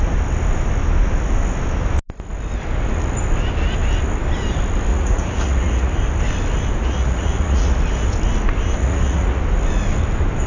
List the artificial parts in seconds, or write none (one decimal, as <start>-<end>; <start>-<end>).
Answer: 4.9-5.9; 6.8-7.8; 8.8-9.4